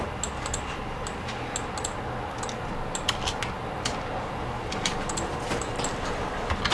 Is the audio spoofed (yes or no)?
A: no